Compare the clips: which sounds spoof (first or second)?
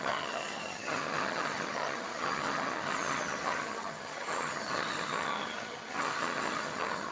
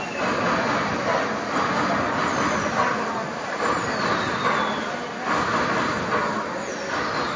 first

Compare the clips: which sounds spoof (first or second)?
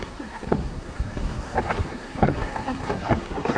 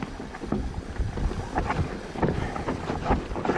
first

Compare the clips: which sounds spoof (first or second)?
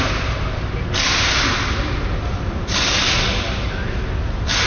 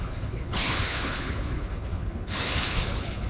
second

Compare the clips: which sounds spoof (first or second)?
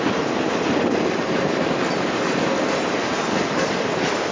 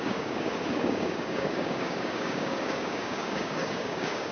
second